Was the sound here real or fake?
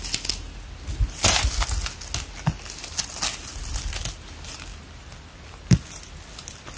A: real